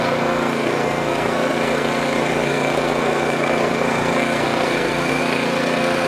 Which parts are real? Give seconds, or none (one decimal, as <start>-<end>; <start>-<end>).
none